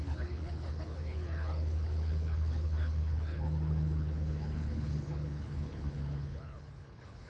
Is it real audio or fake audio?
fake